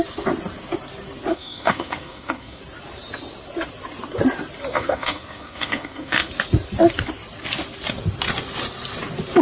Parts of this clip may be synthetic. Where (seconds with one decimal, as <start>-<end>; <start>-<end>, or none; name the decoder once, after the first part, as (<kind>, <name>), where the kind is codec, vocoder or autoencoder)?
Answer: 1.3-2.6 (codec, SNAC); 4.7-6.3

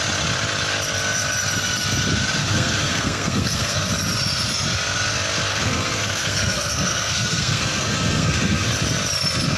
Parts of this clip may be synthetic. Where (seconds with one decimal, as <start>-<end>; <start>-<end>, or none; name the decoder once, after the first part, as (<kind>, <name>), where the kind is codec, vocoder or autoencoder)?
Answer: 2.4-3.9 (codec, SNAC); 5.5-8.7

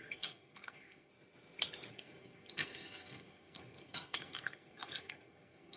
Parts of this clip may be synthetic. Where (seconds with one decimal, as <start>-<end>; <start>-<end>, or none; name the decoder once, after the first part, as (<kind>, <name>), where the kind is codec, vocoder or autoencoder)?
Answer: 0.0-1.1 (codec, SNAC); 1.9-5.8